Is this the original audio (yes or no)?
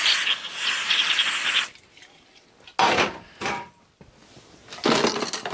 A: yes